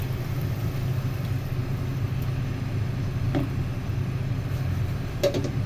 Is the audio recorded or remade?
recorded